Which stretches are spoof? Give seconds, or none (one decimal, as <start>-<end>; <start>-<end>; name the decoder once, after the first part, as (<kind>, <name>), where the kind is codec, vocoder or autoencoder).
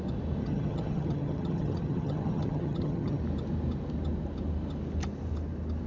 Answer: 0.4-3.2 (vocoder, HiFi-GAN)